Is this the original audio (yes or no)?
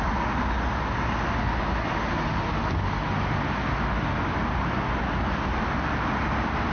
yes